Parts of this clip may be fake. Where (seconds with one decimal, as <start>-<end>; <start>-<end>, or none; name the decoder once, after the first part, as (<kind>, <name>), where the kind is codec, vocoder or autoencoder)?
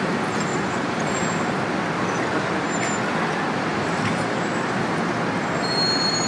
0.5-1.4 (vocoder, BigVGAN v2); 3.7-4.4